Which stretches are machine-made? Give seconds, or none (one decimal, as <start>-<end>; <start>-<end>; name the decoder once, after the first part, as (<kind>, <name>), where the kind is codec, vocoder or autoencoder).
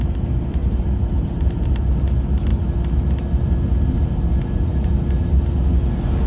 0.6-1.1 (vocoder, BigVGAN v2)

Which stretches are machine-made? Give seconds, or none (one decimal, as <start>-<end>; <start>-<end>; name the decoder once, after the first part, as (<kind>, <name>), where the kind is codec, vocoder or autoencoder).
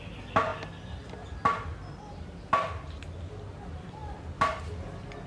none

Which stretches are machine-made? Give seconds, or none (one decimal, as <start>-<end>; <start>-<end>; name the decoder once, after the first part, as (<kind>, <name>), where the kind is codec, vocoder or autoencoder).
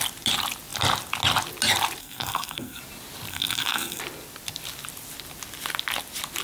2.0-2.8 (codec, SNAC); 3.3-4.0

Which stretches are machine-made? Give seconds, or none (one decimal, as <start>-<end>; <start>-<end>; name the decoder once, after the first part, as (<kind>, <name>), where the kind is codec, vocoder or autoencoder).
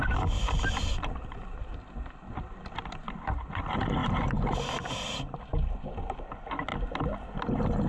none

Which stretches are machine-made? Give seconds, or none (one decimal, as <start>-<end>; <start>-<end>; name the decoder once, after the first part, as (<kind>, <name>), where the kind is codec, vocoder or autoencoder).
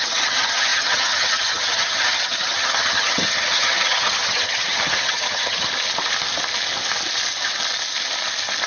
0.0-5.7 (vocoder, HiFi-GAN)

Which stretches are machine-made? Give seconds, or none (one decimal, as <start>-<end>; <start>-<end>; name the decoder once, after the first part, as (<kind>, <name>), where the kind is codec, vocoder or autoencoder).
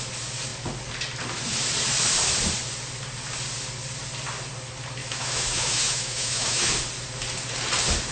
5.0-6.7 (autoencoder, DAC-VAE)